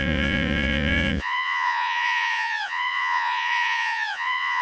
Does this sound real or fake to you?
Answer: fake